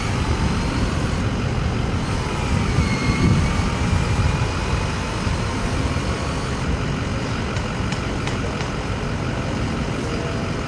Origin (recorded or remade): recorded